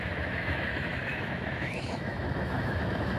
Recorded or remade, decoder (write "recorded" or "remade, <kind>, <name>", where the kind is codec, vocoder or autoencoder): remade, autoencoder, DAC-VAE